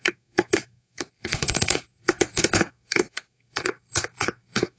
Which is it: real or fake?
fake